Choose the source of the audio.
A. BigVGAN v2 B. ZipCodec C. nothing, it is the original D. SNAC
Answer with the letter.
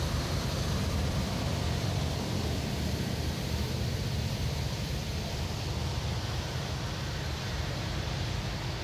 A